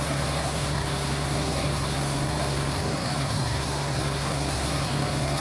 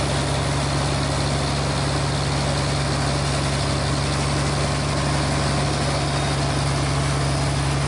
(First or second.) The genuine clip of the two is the second